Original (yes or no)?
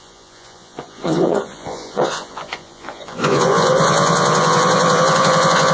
no